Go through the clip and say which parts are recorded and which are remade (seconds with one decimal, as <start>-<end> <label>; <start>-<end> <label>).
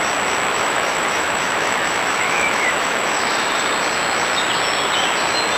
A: 0.0-0.5 recorded; 0.5-3.6 remade; 3.6-5.6 recorded